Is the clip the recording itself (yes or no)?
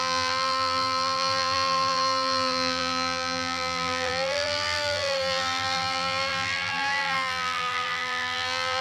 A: no